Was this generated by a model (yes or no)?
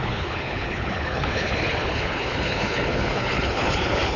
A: yes